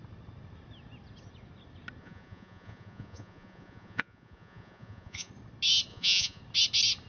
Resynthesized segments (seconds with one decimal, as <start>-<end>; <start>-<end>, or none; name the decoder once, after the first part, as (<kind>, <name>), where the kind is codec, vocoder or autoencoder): 2.0-5.3 (vocoder, Vocos); 5.9-6.4